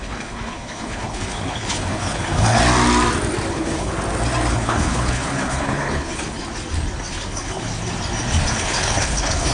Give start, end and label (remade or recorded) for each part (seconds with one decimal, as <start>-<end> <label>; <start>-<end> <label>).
0.0-2.6 remade; 2.6-3.5 recorded; 3.5-3.9 remade; 3.9-4.5 recorded; 4.5-6.4 remade; 6.4-7.1 recorded; 7.1-7.7 remade; 7.7-8.5 recorded; 8.5-9.5 remade